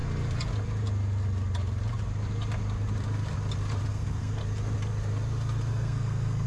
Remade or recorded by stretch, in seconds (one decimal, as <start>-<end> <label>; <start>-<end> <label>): 0.0-3.9 recorded; 3.9-4.4 remade; 4.4-5.7 recorded; 5.7-6.5 remade